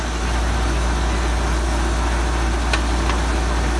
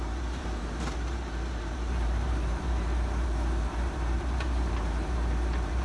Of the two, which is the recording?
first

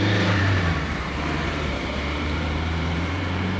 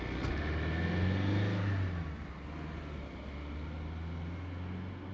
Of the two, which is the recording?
second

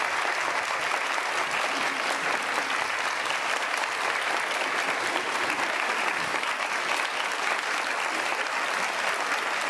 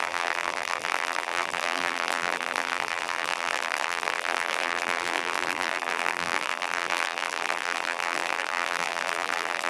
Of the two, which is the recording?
first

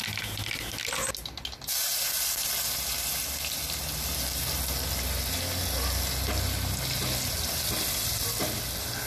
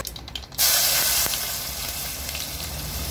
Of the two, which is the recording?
first